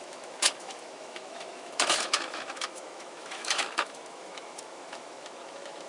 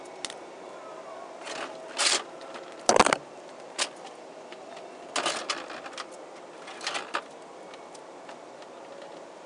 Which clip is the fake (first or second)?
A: first